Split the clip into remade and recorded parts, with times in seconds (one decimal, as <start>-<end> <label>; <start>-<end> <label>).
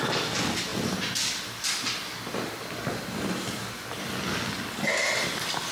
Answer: 0.0-5.7 recorded